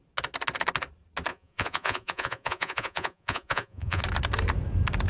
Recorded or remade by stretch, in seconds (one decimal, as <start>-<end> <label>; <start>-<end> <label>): 0.0-1.3 recorded; 1.3-4.0 remade; 4.0-5.1 recorded